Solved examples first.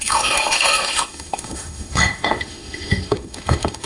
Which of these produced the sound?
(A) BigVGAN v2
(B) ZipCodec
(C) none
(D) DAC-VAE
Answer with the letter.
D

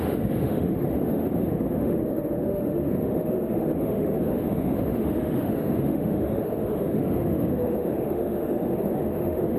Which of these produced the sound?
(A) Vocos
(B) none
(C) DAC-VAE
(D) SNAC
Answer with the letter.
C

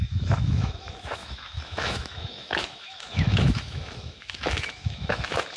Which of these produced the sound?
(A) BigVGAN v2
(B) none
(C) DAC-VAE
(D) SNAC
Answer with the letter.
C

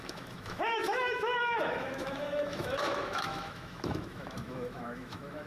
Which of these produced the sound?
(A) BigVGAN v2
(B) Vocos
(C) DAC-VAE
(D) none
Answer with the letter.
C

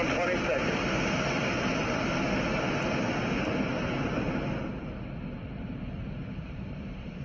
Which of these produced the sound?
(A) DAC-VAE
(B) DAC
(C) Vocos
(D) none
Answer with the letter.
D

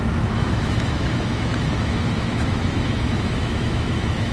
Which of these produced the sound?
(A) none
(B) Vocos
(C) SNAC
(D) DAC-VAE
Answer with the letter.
D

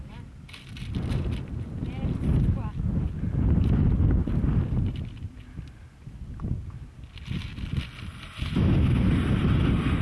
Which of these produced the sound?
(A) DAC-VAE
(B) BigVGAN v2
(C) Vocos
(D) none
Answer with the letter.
D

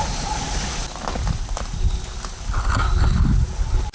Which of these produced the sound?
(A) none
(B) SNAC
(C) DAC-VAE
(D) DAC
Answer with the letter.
A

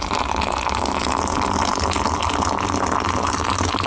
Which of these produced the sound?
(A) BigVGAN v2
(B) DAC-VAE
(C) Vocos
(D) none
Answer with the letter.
D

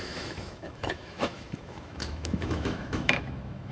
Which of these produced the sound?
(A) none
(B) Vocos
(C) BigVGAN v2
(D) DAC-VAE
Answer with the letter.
D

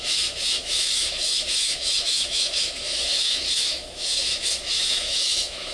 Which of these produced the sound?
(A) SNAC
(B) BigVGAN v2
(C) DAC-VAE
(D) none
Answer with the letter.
C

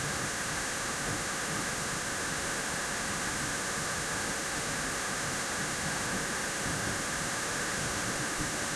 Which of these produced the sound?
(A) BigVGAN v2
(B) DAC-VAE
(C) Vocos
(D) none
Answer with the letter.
B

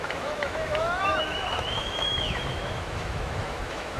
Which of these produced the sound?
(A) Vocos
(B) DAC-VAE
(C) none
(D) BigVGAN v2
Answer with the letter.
B